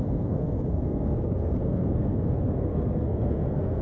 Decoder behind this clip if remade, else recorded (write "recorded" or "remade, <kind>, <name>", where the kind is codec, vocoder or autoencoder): remade, codec, SNAC